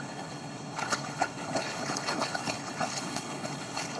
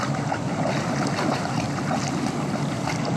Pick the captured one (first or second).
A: second